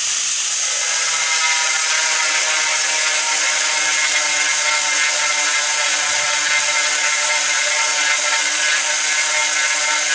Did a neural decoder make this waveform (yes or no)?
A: no